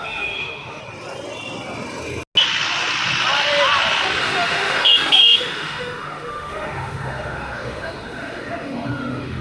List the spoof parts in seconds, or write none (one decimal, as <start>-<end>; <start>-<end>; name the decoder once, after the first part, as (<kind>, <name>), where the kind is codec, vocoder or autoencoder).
0.0-0.8 (autoencoder, DAC-VAE); 4.2-9.4